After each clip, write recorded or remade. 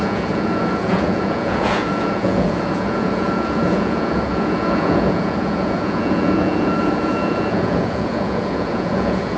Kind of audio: remade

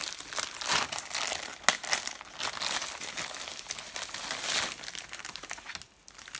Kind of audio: recorded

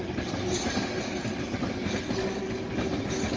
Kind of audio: recorded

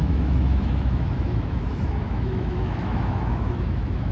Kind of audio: remade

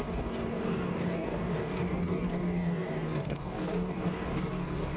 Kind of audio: remade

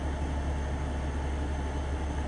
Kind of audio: recorded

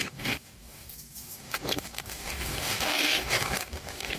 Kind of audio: remade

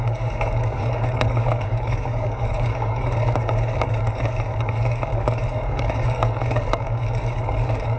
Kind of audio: remade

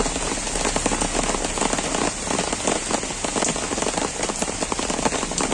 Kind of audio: recorded